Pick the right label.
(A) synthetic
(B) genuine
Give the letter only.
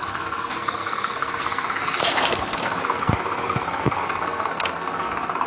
A